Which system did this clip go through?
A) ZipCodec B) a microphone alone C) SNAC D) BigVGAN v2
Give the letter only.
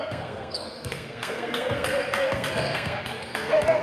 C